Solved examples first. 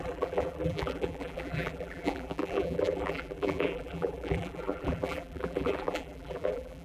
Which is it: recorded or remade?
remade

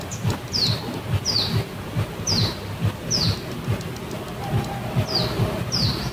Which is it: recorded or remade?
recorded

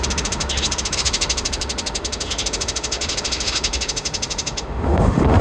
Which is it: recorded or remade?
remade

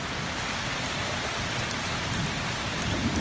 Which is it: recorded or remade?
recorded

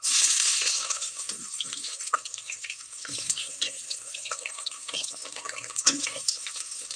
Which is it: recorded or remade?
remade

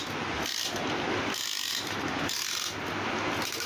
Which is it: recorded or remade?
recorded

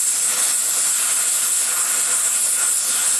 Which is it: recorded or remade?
recorded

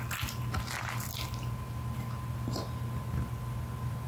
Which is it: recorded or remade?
recorded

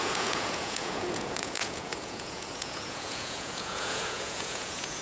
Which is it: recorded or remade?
remade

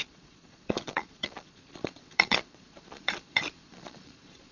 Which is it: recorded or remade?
remade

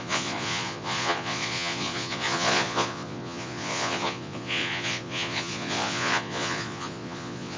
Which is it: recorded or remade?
remade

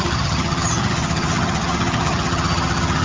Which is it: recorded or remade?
remade